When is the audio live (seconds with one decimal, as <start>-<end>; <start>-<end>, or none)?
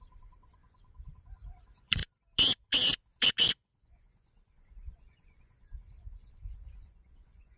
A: 2.0-3.5